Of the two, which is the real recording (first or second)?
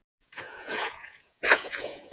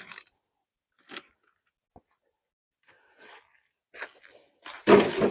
second